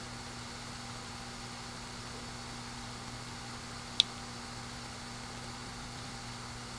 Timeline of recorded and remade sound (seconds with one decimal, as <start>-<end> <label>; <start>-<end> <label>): 0.0-5.6 recorded; 5.6-6.2 remade; 6.2-6.8 recorded